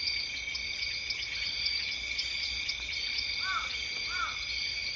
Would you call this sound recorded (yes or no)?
yes